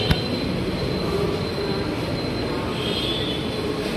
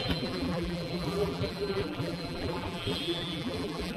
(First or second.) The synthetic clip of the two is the second